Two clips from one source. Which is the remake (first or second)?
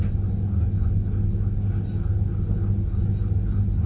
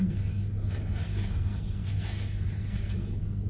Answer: second